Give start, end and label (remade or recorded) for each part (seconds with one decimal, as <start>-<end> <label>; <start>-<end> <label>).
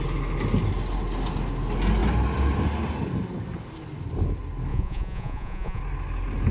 0.0-4.7 recorded; 4.7-5.8 remade; 5.8-6.5 recorded